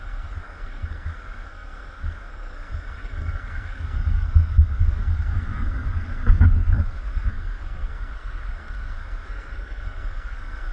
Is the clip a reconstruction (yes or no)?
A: yes